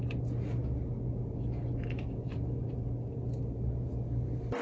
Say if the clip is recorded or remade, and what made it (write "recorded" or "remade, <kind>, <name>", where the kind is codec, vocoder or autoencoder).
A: recorded